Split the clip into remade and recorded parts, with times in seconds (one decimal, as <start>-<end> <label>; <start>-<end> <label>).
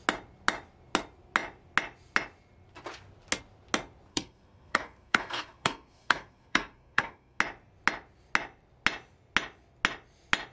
0.0-4.1 recorded; 4.1-7.4 remade; 7.4-10.5 recorded